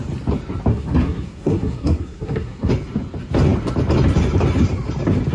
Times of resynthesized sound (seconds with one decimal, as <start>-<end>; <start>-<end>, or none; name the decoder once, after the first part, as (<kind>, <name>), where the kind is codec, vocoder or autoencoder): 0.7-2.7 (codec, SNAC)